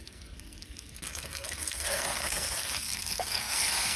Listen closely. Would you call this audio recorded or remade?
remade